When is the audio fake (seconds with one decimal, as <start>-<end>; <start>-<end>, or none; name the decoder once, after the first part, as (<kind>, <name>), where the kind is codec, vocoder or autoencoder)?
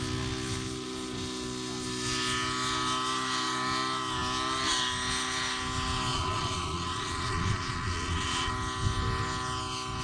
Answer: 6.1-8.5 (vocoder, Vocos)